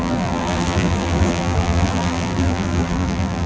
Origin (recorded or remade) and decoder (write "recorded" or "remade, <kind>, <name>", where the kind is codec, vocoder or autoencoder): remade, vocoder, BigVGAN v2